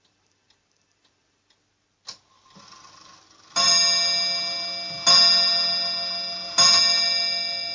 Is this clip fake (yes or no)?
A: no